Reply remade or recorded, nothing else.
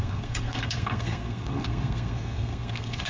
remade